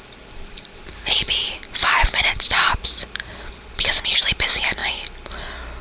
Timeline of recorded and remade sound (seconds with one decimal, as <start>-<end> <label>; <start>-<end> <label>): 0.0-4.8 remade; 4.8-5.8 recorded